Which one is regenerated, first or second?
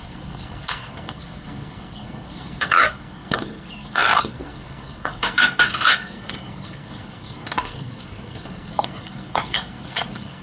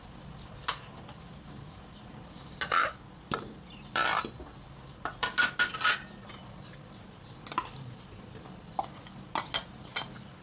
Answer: first